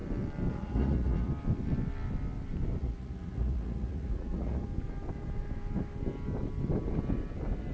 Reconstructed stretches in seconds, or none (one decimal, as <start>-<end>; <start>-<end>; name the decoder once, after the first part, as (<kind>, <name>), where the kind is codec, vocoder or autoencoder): 0.5-1.3 (vocoder, Vocos); 2.8-4.6